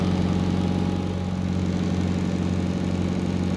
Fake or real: real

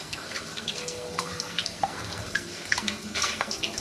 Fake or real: fake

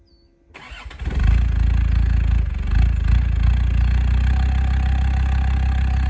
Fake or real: real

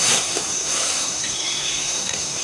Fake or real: fake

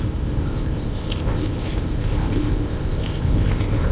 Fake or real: fake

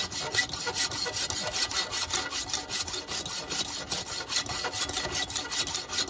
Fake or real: real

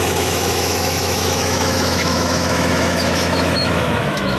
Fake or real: fake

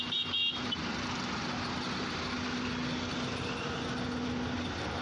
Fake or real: real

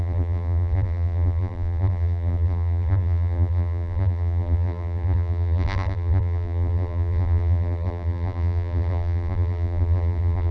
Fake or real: fake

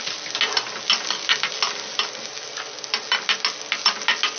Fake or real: real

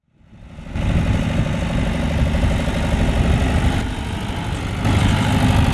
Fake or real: real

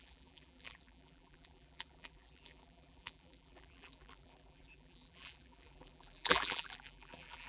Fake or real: fake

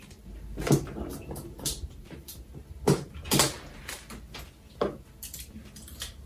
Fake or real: real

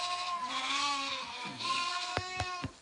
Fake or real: fake